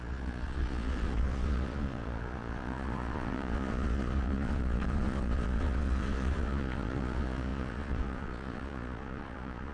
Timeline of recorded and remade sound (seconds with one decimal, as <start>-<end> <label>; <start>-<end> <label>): 0.0-9.7 remade